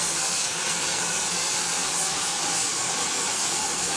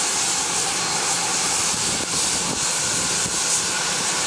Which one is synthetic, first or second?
first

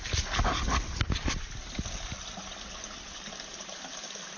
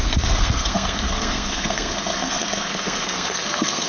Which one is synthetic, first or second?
second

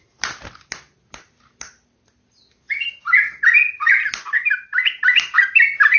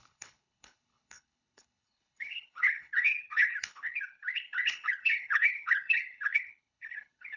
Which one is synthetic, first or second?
second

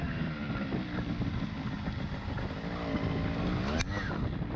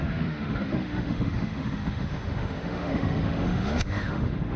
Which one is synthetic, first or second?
second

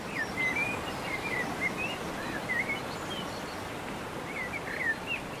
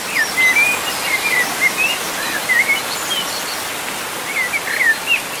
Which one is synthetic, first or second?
first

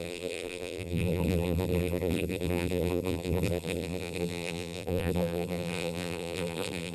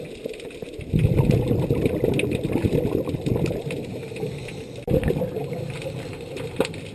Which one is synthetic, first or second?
first